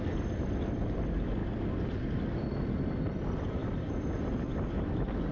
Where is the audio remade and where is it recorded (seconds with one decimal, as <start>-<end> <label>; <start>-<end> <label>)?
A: 0.0-5.3 recorded